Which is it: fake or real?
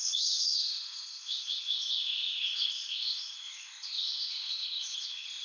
fake